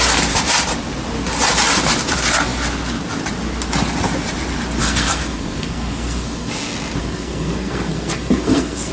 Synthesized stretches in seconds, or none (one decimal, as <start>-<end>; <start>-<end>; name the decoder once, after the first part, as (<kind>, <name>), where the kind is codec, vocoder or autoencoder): 4.8-6.5 (codec, SNAC); 7.0-8.9